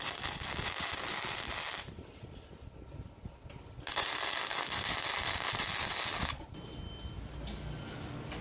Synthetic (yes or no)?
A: no